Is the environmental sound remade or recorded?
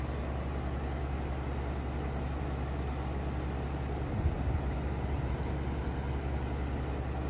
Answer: recorded